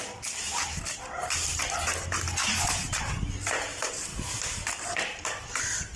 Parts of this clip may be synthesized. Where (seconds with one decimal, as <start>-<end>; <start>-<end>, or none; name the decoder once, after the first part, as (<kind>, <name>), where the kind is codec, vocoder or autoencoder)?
4.1-5.6 (vocoder, BigVGAN v2)